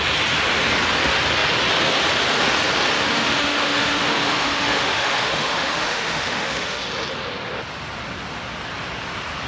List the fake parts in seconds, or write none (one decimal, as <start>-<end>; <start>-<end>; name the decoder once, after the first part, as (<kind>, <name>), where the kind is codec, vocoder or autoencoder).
3.1-6.8 (autoencoder, DAC-VAE)